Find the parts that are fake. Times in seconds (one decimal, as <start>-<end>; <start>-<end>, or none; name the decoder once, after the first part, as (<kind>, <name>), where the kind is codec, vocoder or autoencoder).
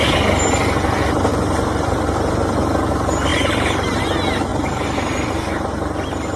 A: 1.3-2.1 (vocoder, BigVGAN v2); 3.3-4.0; 4.5-5.3